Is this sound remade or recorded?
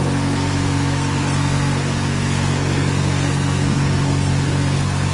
remade